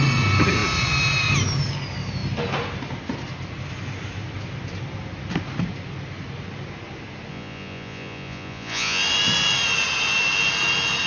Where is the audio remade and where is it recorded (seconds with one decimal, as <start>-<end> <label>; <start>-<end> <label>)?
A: 0.0-7.3 recorded; 7.3-9.0 remade; 9.0-11.1 recorded